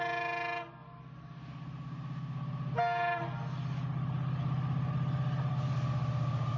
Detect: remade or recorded recorded